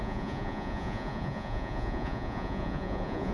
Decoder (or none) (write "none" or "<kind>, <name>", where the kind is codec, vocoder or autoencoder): vocoder, Vocos